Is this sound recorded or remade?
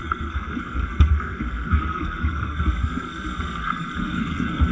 remade